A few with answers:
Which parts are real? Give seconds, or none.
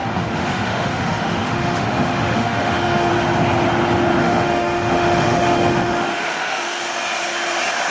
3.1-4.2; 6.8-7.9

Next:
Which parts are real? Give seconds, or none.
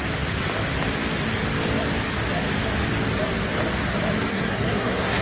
0.0-4.3